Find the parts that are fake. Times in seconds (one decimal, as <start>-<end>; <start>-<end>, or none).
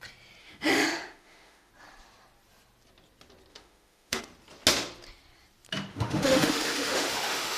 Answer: 0.4-1.7; 3.5-4.2; 5.9-7.6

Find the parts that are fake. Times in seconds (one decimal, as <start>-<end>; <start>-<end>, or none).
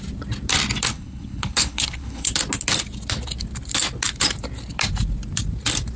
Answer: 0.9-2.3